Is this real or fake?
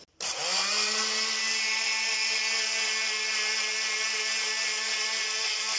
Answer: real